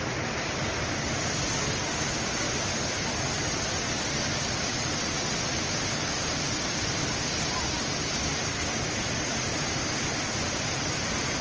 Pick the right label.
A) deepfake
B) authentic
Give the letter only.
B